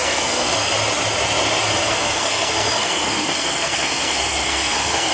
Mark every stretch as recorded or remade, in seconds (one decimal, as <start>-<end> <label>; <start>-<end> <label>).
0.0-0.7 remade; 0.7-1.8 recorded; 1.8-5.1 remade